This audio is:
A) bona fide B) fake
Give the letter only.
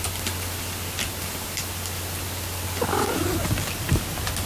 A